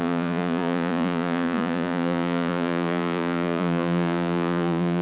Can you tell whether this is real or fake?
fake